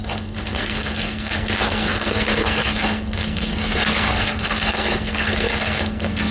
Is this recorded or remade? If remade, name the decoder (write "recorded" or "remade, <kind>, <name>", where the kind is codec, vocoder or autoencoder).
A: remade, codec, SNAC